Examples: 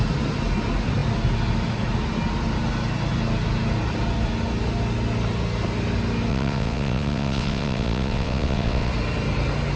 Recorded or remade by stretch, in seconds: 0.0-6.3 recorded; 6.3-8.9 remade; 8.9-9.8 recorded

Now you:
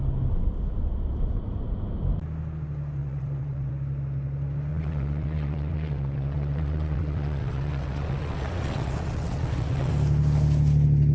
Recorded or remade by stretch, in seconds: 0.0-3.0 recorded; 3.0-3.7 remade; 3.7-4.7 recorded; 4.7-9.9 remade; 9.9-11.1 recorded

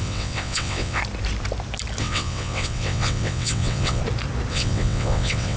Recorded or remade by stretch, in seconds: 0.0-1.0 remade; 1.0-2.0 recorded; 2.0-4.0 remade; 4.0-4.5 recorded; 4.5-5.6 remade

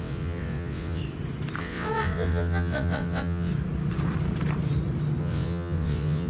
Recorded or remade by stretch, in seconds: 0.0-1.0 remade; 1.0-1.6 recorded; 1.6-3.5 remade; 3.5-5.2 recorded; 5.2-6.3 remade

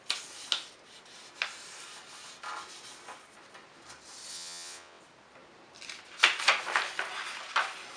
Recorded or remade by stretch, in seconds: 0.0-4.3 recorded; 4.3-5.0 remade; 5.0-8.0 recorded

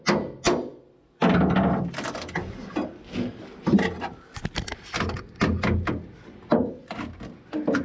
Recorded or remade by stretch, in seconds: 0.0-7.8 recorded

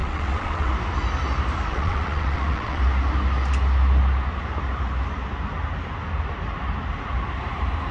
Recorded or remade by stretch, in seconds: 0.0-0.7 remade; 0.7-1.7 recorded; 1.7-2.8 remade; 2.8-7.9 recorded

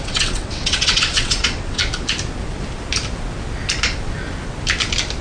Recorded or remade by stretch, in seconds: 0.0-1.8 remade; 1.8-5.2 recorded